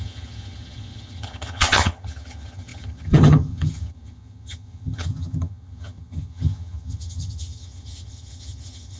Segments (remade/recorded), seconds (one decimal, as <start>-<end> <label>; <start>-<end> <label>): 0.0-9.0 remade